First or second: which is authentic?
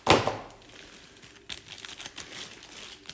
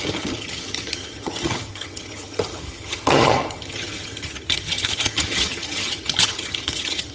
first